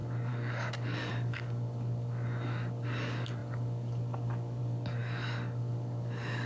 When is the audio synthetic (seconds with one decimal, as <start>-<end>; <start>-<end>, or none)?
0.0-6.5